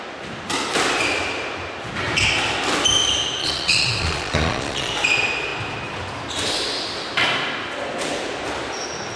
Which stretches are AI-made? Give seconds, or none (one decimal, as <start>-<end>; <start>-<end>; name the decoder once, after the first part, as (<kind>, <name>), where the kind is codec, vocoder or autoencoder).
3.4-4.9 (vocoder, Vocos)